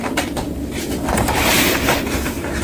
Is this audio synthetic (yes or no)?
no